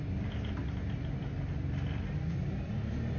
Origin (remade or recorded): recorded